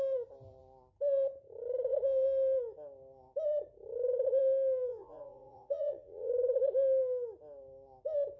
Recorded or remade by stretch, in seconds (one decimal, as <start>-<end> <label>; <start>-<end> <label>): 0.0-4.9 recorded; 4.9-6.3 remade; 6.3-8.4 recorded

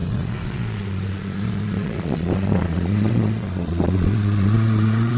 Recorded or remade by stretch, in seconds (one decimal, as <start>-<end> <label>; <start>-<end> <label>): 0.0-5.2 remade

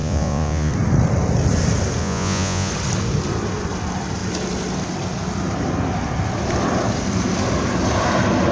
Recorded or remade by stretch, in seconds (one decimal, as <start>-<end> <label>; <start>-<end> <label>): 0.0-0.7 remade; 0.7-2.0 recorded; 2.0-2.7 remade; 2.7-8.5 recorded